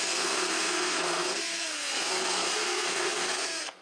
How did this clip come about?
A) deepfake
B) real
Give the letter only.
A